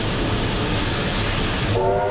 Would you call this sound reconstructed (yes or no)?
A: no